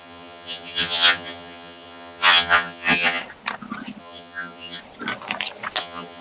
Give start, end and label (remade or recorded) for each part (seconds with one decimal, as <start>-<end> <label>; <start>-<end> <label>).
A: 0.0-3.2 remade; 3.2-4.0 recorded; 4.0-4.8 remade; 4.8-5.8 recorded; 5.8-6.2 remade